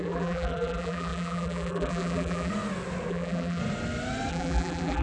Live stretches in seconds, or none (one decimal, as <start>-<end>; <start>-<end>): 2.5-3.1; 3.6-4.3

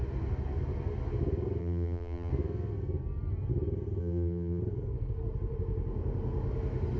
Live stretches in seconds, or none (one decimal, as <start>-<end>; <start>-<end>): 0.0-1.6; 2.3-4.0; 4.6-7.0